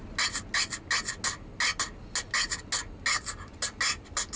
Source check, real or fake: real